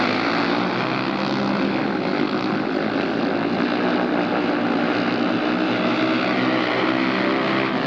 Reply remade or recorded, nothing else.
recorded